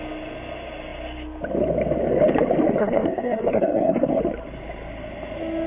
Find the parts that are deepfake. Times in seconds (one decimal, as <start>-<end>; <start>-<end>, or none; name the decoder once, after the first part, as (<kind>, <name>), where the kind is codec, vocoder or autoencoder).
2.8-4.2 (codec, SNAC)